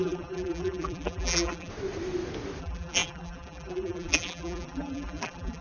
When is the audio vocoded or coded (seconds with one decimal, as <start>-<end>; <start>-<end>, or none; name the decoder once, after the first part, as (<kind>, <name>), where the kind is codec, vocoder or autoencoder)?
0.0-1.7 (vocoder, BigVGAN v2); 2.6-5.6